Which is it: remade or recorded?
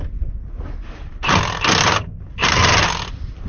recorded